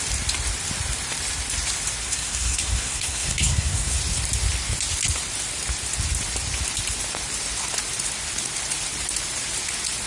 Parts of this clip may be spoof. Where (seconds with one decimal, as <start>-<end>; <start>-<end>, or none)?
2.0-4.0